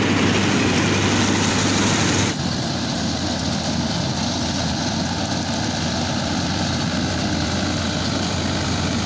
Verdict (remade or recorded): remade